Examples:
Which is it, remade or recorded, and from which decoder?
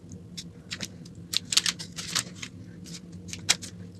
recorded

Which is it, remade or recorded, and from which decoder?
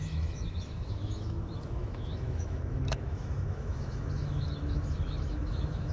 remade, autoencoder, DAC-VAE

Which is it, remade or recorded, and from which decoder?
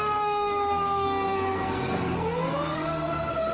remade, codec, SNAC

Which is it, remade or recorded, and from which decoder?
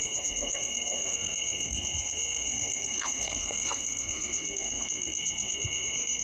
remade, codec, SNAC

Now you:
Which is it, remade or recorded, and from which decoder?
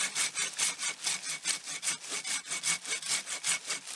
recorded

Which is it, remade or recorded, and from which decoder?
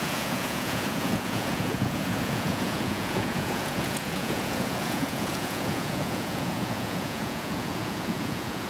remade, vocoder, Vocos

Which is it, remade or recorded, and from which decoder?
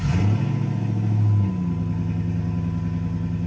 recorded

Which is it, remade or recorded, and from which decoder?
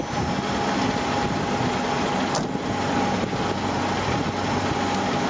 recorded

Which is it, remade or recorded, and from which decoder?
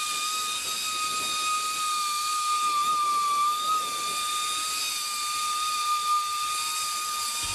recorded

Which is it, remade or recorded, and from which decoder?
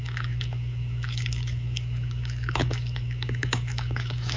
remade, autoencoder, DAC-VAE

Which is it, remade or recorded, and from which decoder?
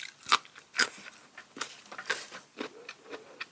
recorded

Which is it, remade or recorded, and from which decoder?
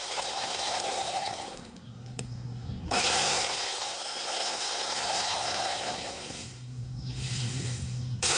remade, codec, SNAC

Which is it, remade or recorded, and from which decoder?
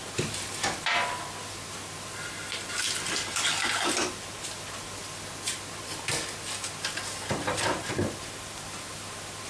recorded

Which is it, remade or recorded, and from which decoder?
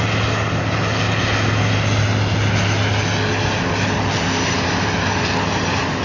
recorded